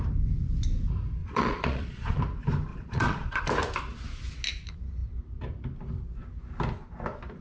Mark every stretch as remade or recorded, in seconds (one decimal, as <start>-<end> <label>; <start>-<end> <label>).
0.0-1.2 recorded; 1.2-2.2 remade; 2.2-2.7 recorded; 2.7-3.4 remade; 3.4-7.4 recorded